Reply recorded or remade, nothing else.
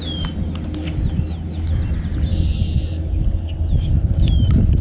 recorded